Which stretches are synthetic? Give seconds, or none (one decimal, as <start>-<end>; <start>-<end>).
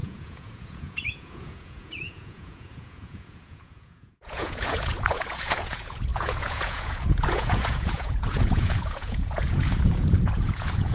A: 0.0-10.9